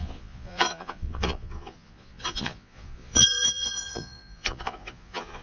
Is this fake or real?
fake